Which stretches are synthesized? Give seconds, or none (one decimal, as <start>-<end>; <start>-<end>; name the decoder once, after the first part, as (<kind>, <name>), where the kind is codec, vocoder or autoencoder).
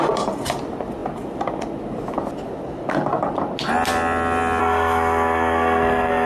4.6-6.3 (codec, SNAC)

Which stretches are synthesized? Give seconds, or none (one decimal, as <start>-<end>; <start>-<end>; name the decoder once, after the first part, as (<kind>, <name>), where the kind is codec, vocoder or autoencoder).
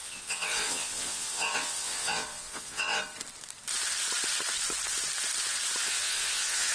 0.0-3.0 (vocoder, WaveNeXt); 5.8-6.7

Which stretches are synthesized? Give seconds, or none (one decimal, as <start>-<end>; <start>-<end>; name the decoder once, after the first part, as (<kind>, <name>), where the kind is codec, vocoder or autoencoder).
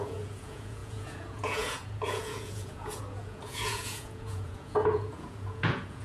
0.0-6.0 (vocoder, Vocos)